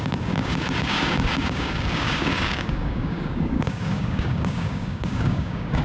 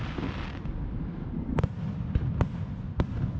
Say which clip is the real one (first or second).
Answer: second